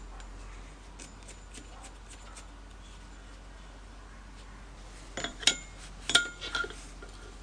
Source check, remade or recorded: recorded